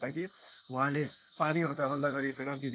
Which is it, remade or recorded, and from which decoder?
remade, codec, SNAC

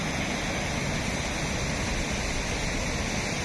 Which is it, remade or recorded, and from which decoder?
recorded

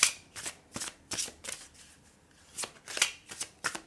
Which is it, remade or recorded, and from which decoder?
recorded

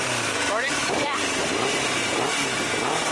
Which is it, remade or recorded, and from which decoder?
recorded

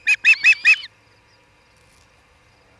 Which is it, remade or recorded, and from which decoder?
recorded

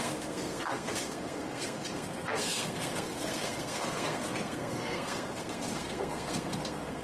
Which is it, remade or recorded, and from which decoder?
remade, codec, SNAC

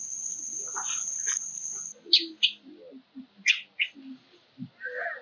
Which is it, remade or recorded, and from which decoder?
recorded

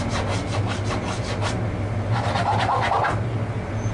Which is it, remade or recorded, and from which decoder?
recorded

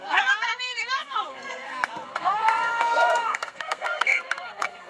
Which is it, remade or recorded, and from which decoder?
remade, codec, SNAC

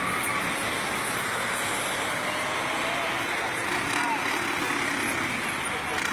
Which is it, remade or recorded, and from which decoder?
recorded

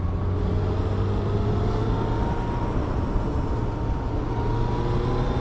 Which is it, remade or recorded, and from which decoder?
recorded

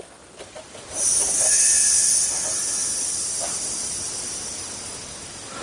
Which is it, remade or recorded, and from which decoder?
recorded